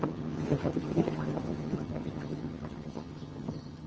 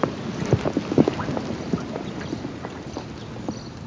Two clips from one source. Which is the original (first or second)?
second